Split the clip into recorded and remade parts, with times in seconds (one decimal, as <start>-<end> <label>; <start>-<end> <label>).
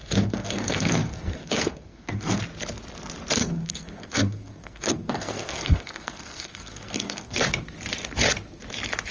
0.0-2.4 remade; 2.4-3.4 recorded; 3.4-7.4 remade; 7.4-9.1 recorded